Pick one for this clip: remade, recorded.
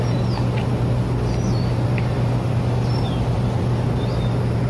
recorded